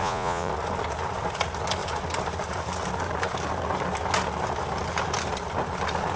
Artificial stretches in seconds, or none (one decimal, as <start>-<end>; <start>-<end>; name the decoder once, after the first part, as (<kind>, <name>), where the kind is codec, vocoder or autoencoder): 0.0-0.5 (vocoder, Vocos)